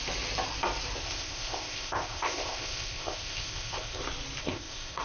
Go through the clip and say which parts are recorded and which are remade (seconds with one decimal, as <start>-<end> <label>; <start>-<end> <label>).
0.0-1.0 recorded; 1.0-4.0 remade; 4.0-4.4 recorded; 4.4-5.0 remade